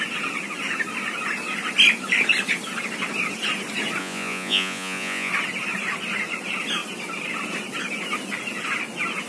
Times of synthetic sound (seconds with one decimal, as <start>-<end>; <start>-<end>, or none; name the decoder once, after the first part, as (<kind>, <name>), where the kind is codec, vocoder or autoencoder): 4.0-5.3 (vocoder, Vocos)